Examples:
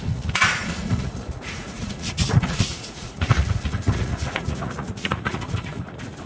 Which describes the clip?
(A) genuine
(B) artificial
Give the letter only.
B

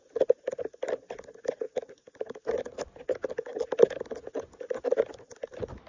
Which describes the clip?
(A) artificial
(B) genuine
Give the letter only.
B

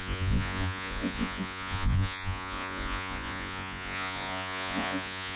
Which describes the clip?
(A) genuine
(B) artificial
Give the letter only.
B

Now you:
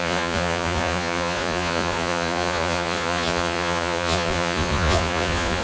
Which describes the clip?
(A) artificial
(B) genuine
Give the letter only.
A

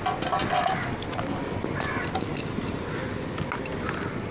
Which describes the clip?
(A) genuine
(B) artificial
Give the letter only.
A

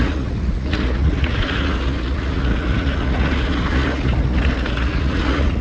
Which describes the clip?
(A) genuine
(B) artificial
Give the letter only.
B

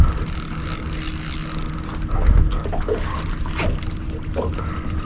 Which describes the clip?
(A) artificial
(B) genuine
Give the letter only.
B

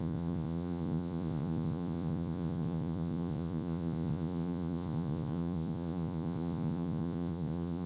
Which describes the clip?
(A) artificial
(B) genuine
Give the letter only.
A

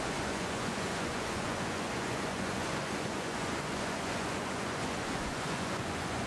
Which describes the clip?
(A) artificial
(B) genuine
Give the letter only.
A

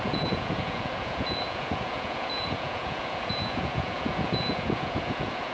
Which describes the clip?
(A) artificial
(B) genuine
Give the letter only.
A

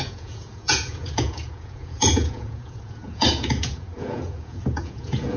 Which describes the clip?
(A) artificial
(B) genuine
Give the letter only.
A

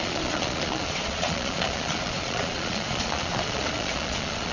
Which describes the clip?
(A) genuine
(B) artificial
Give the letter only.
B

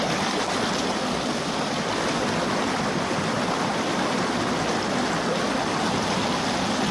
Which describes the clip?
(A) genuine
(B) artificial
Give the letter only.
A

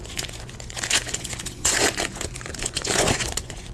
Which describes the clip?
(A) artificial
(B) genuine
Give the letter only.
A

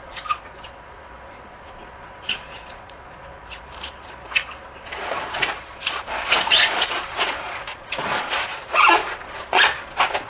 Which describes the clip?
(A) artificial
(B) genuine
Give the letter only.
A